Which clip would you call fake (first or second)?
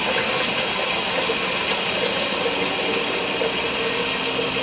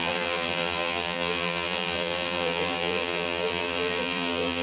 second